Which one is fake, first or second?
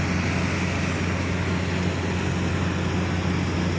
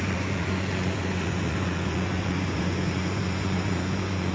second